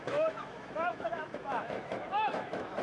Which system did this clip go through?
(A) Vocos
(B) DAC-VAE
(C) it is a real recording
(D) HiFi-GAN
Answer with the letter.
B